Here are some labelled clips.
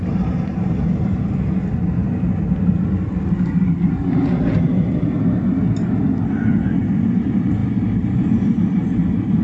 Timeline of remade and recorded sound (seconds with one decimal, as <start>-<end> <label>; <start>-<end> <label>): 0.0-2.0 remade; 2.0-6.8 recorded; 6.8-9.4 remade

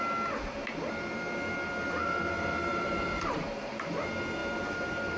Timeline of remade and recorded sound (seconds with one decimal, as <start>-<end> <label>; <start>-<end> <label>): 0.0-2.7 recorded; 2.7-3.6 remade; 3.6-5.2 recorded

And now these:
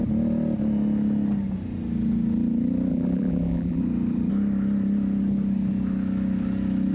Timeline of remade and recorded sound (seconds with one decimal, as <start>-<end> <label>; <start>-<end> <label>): 0.0-2.9 recorded; 2.9-3.8 remade; 3.8-6.9 recorded